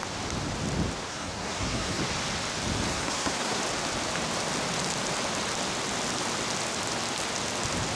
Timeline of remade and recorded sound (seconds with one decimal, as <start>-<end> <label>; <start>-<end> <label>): 0.0-1.1 recorded; 1.1-2.0 remade; 2.0-2.9 recorded; 2.9-3.6 remade; 3.6-8.0 recorded